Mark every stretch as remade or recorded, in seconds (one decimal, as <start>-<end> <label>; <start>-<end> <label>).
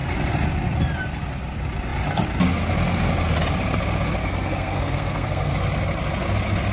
0.0-4.2 recorded; 4.2-5.5 remade; 5.5-6.7 recorded